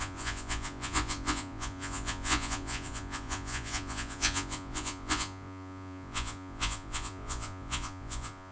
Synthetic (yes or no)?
yes